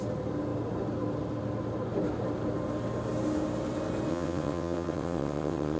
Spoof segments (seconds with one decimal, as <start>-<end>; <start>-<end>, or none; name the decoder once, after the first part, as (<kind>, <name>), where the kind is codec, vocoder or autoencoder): 4.1-5.8 (vocoder, WaveNeXt)